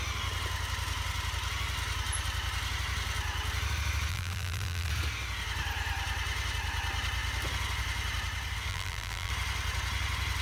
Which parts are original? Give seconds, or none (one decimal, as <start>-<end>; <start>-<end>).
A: 0.0-4.1; 4.9-8.7; 9.3-10.4